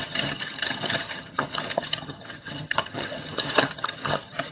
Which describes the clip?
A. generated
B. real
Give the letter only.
A